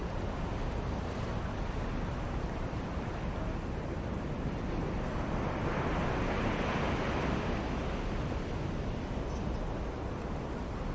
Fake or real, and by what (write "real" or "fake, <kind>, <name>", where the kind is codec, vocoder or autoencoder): real